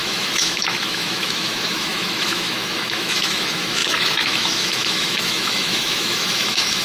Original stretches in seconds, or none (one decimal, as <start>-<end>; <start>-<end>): none